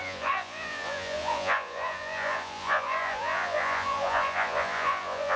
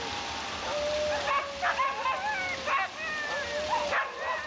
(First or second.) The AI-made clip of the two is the first